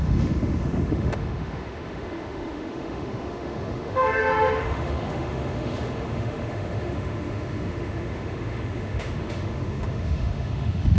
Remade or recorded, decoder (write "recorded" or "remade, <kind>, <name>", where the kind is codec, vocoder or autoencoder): remade, autoencoder, DAC-VAE